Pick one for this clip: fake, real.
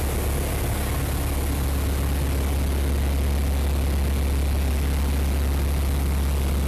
real